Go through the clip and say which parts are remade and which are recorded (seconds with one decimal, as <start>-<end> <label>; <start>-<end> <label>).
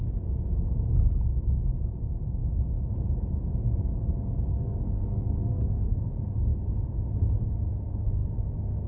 0.0-4.5 recorded; 4.5-6.1 remade; 6.1-8.9 recorded